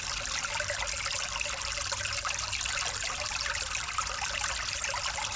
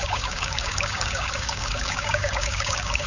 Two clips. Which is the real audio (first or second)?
first